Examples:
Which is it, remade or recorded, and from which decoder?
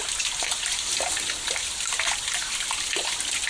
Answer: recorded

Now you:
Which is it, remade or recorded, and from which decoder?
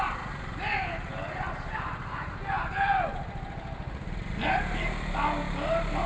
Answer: recorded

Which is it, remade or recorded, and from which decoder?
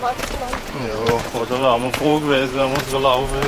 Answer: remade, vocoder, Vocos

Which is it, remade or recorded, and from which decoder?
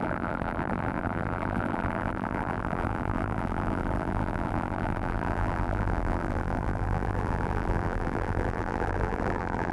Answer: remade, vocoder, BigVGAN v2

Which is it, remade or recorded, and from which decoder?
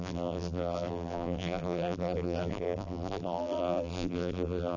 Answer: remade, vocoder, BigVGAN v2